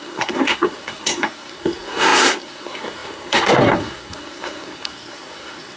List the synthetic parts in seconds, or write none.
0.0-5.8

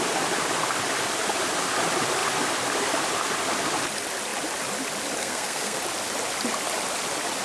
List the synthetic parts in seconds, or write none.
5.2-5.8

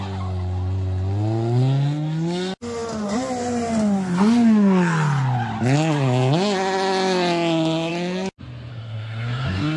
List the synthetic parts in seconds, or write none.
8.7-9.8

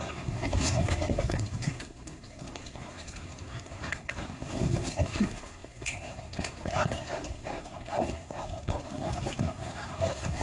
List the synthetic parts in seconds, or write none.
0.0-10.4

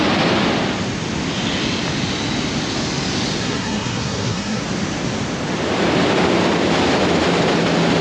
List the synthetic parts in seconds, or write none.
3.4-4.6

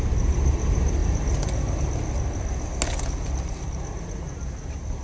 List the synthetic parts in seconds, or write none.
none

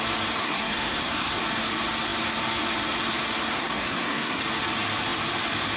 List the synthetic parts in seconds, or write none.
0.4-1.4; 3.5-4.4

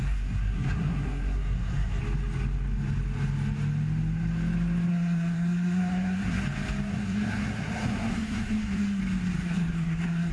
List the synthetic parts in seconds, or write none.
0.0-2.0; 4.9-6.4; 6.9-9.0; 9.4-10.3